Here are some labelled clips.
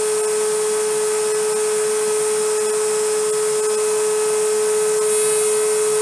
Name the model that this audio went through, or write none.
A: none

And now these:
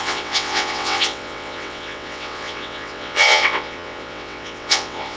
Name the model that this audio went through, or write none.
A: vocoder, WaveNeXt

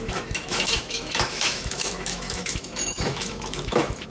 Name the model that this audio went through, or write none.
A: autoencoder, DAC-VAE